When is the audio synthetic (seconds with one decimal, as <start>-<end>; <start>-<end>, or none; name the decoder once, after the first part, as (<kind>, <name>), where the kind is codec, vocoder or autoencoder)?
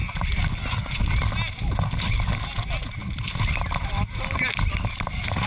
none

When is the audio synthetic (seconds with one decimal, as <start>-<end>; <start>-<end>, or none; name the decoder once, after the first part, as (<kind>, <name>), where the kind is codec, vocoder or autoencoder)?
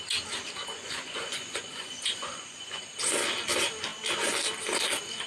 0.7-2.8 (vocoder, Vocos)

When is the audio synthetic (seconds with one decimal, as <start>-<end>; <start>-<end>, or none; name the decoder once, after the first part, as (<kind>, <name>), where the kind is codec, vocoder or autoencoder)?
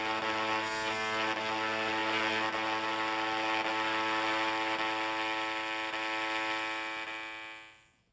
none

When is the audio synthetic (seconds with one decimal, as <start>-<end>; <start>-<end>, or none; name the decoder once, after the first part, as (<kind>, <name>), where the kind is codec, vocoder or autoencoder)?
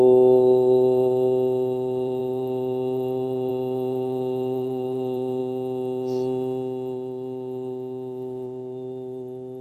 0.0-5.4 (vocoder, BigVGAN v2)